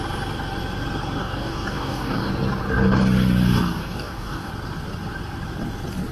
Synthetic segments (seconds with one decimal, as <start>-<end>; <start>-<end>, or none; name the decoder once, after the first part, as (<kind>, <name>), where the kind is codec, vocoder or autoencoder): 1.2-2.3 (codec, DAC); 3.8-4.5